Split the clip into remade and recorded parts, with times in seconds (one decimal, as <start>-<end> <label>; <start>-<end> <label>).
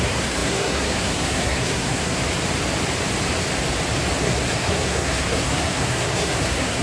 0.0-2.2 remade; 2.2-4.2 recorded; 4.2-6.8 remade